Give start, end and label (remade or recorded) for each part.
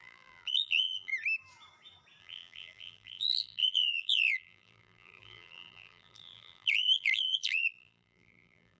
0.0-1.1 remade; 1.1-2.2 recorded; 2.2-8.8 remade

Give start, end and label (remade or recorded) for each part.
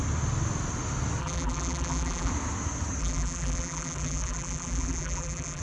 0.0-1.2 recorded; 1.2-2.3 remade; 2.3-3.0 recorded; 3.0-5.6 remade